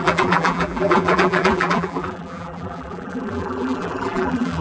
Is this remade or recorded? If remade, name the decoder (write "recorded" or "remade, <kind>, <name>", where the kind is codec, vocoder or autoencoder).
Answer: remade, vocoder, BigVGAN v2